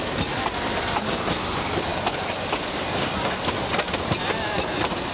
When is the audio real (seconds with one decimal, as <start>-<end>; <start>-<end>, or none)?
none